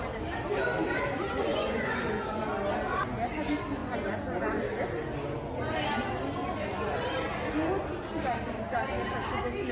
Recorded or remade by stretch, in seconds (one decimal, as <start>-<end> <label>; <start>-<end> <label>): 0.0-1.5 recorded; 1.5-2.4 remade; 2.4-3.8 recorded; 3.8-4.6 remade; 4.6-9.7 recorded